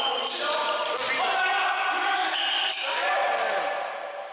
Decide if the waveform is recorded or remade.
recorded